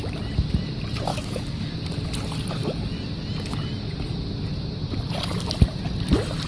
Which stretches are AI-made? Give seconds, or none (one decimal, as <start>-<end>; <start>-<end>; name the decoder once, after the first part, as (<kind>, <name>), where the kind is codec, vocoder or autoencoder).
1.1-1.7 (codec, DAC)

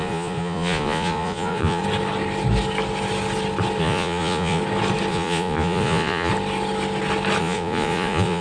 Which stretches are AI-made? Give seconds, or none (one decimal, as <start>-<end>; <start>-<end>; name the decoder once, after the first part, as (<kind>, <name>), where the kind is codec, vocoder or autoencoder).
0.0-1.8 (vocoder, Vocos); 3.8-4.6; 5.1-6.3; 7.4-8.4